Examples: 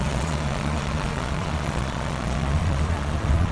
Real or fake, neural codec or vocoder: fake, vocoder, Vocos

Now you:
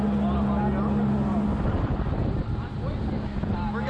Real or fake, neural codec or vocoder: real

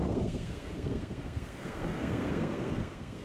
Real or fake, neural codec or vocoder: fake, codec, SNAC